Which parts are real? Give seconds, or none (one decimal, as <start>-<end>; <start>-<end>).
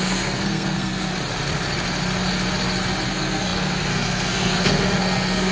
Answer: 1.1-3.1